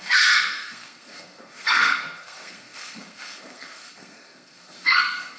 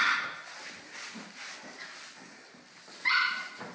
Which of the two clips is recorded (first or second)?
second